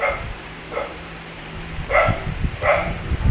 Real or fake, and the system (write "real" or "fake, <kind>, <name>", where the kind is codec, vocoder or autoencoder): fake, vocoder, BigVGAN v2